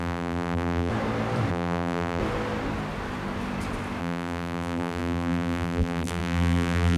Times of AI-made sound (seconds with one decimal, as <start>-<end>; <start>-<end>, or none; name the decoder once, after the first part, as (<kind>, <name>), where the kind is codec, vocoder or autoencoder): 0.0-0.9 (vocoder, BigVGAN v2); 1.5-2.2; 4.0-7.0